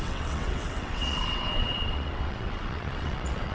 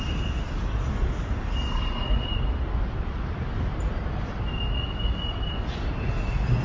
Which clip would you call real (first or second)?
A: second